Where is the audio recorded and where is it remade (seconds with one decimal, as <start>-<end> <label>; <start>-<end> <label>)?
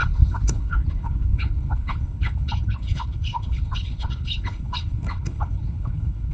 0.0-6.3 remade